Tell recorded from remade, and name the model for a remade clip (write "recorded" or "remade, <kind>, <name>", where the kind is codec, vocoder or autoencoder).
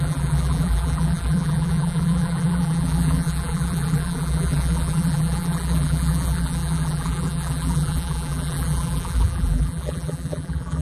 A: remade, vocoder, BigVGAN v2